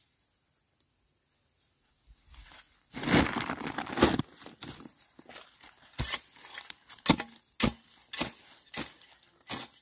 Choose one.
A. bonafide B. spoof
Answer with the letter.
A